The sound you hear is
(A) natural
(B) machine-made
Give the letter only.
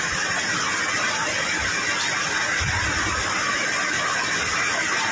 A